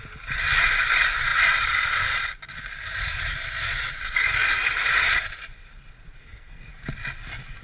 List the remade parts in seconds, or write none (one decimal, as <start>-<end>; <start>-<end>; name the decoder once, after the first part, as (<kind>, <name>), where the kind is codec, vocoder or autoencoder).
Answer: 6.2-6.7 (codec, SNAC)